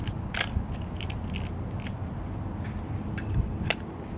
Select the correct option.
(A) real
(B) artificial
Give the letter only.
A